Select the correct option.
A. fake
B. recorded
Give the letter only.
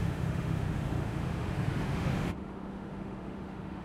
A